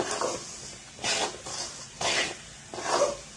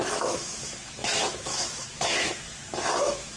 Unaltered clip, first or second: first